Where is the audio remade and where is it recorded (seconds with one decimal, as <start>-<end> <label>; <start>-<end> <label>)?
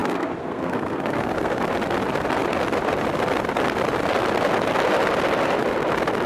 0.0-1.6 remade; 1.6-6.3 recorded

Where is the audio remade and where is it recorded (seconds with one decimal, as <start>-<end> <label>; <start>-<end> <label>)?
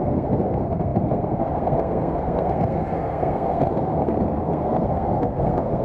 0.0-5.8 remade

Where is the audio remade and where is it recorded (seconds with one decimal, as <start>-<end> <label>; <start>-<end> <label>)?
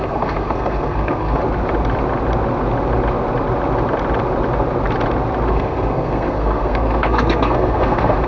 0.0-1.4 remade; 1.4-5.5 recorded; 5.5-8.3 remade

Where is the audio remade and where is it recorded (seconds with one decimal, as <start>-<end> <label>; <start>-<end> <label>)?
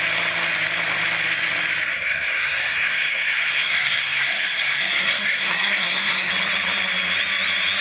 0.0-1.9 recorded; 1.9-6.3 remade; 6.3-7.8 recorded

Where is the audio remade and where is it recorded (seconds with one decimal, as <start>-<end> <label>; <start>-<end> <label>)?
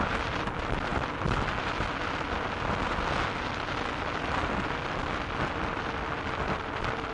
0.0-7.1 recorded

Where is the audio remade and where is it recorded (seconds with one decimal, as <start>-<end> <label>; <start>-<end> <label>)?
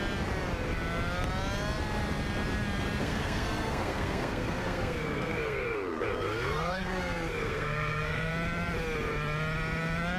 0.0-3.0 recorded; 3.0-8.3 remade; 8.3-10.2 recorded